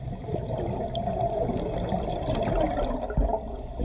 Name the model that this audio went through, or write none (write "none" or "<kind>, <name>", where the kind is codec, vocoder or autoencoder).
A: none